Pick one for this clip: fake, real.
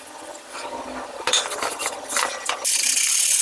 fake